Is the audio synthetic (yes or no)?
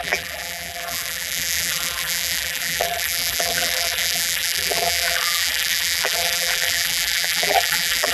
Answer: yes